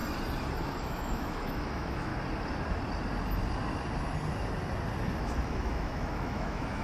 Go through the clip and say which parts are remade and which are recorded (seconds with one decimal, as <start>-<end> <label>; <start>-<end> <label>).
0.0-0.6 recorded; 0.6-2.1 remade; 2.1-5.2 recorded; 5.2-6.8 remade

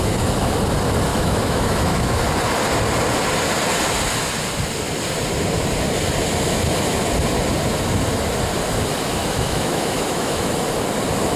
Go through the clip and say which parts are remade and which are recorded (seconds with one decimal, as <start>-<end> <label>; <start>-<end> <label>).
0.0-1.1 recorded; 1.1-2.2 remade; 2.2-9.2 recorded; 9.2-10.5 remade; 10.5-11.4 recorded

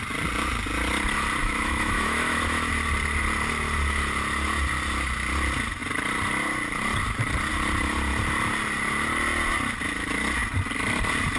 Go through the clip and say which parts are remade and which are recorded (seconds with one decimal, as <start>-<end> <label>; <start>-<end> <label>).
0.0-1.4 recorded; 1.4-2.7 remade; 2.7-11.4 recorded

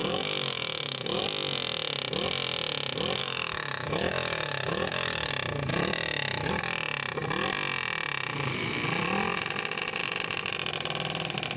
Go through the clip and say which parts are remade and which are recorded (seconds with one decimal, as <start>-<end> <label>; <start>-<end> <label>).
0.0-1.2 remade; 1.2-3.2 recorded; 3.2-5.3 remade; 5.3-11.6 recorded

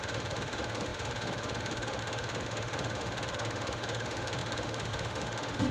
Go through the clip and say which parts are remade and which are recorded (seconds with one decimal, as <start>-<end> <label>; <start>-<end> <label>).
0.0-5.7 remade